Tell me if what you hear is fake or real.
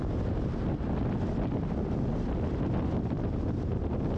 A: real